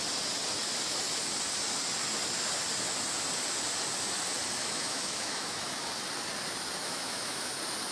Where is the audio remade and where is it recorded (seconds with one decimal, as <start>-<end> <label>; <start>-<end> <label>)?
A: 0.0-4.6 recorded; 4.6-5.9 remade; 5.9-6.8 recorded; 6.8-7.5 remade; 7.5-7.9 recorded